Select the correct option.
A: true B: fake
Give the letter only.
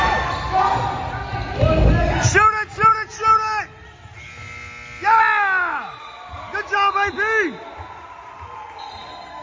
A